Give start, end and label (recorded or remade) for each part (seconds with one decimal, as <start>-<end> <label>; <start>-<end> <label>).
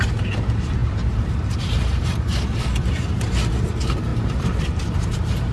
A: 0.0-2.3 remade; 2.3-2.8 recorded; 2.8-5.5 remade